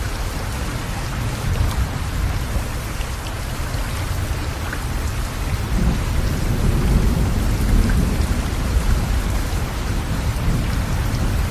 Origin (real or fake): real